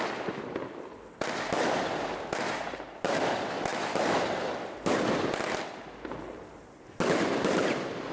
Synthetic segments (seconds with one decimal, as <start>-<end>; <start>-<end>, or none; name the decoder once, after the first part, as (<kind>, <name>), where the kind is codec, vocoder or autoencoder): none